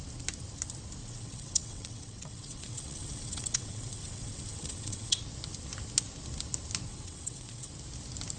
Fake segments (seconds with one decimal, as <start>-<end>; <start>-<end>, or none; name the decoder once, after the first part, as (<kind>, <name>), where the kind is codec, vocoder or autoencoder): 1.0-5.2 (vocoder, WaveNeXt); 6.9-7.7